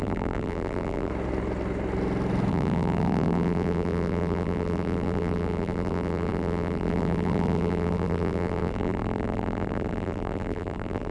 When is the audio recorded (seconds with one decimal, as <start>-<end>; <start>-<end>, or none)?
1.1-2.5